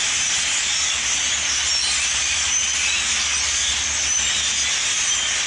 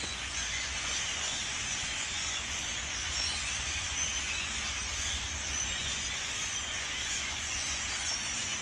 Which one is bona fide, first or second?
first